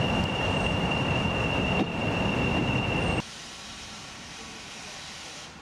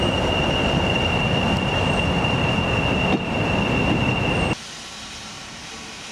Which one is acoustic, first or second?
second